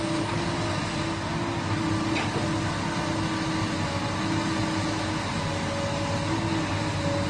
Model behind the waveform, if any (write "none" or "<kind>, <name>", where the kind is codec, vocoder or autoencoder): none